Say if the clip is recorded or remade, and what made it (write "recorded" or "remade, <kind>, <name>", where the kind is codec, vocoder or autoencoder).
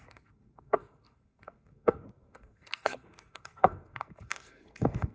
remade, codec, SNAC